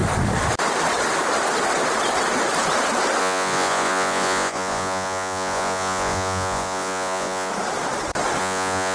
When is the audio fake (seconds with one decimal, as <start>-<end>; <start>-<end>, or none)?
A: 3.2-7.5; 8.4-8.9